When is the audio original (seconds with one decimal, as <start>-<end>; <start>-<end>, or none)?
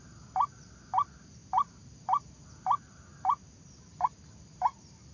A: 0.0-1.4; 2.0-3.1; 3.8-5.1